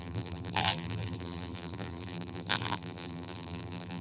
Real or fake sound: fake